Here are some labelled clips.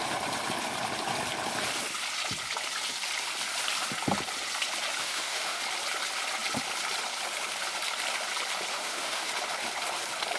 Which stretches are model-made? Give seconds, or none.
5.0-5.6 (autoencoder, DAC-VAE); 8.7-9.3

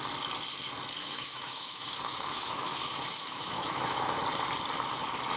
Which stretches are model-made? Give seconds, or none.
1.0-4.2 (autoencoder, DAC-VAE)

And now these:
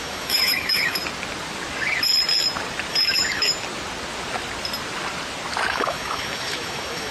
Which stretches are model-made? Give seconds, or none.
0.0-1.0 (autoencoder, DAC-VAE); 2.9-3.5; 5.7-7.1

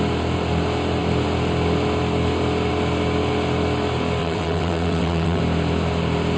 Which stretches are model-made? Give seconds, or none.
4.2-5.4 (vocoder, WaveNeXt)

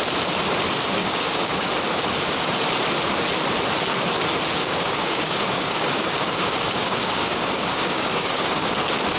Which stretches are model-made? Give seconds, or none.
1.0-1.7 (codec, DAC); 4.6-8.7